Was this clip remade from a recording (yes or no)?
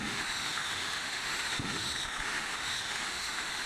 yes